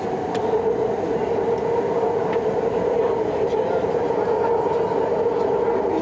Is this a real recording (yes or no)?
yes